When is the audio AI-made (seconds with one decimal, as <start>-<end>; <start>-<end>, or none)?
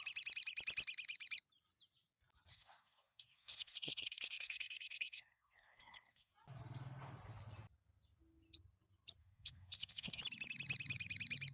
2.5-6.3; 9.2-10.2